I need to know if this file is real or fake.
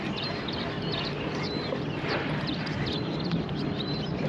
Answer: fake